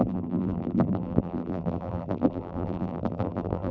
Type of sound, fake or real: fake